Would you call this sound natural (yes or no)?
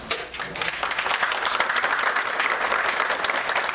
yes